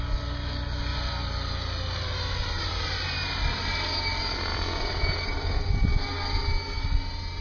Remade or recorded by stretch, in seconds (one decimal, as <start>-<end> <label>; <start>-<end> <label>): 0.0-7.4 recorded